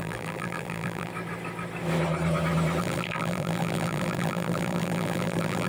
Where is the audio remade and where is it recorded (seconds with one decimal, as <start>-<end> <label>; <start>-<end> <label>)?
0.0-1.1 remade; 1.1-2.8 recorded; 2.8-5.7 remade